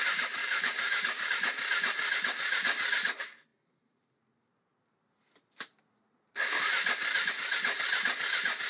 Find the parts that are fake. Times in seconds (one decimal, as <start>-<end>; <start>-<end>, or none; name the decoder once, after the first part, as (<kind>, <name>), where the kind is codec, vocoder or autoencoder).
0.4-1.3 (codec, DAC)